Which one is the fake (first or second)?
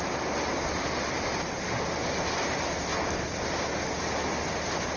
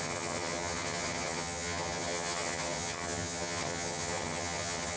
second